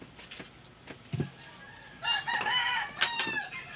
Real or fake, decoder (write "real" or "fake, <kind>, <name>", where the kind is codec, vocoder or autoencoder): real